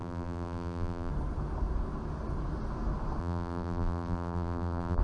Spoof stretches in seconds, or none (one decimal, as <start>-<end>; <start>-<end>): 0.0-1.1; 3.2-5.0